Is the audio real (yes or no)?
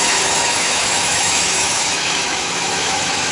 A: no